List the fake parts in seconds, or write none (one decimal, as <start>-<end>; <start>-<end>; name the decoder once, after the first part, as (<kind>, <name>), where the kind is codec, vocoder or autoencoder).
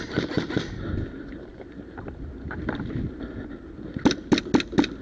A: none